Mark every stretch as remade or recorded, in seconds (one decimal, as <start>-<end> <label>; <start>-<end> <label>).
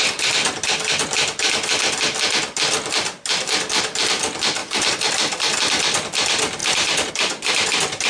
0.0-4.6 recorded; 4.6-5.1 remade; 5.1-6.6 recorded; 6.6-7.1 remade; 7.1-8.1 recorded